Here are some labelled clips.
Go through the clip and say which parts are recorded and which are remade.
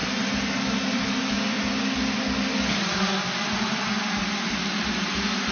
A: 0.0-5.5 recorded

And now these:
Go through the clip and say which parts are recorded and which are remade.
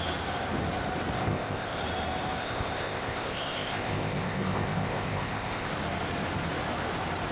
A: 0.0-1.2 recorded; 1.2-1.8 remade; 1.8-2.4 recorded; 2.4-5.7 remade; 5.7-7.3 recorded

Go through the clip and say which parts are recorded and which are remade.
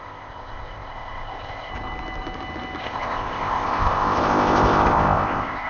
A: 0.0-1.7 remade; 1.7-2.8 recorded; 2.8-5.7 remade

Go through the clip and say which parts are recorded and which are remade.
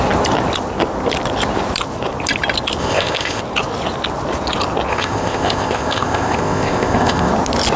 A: 0.0-2.8 recorded; 2.8-3.4 remade; 3.4-4.9 recorded; 4.9-7.3 remade; 7.3-7.8 recorded